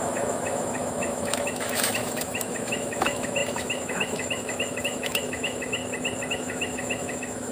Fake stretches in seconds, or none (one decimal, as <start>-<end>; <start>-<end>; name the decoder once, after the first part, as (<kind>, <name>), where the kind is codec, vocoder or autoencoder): 0.0-5.8 (autoencoder, DAC-VAE); 6.3-7.5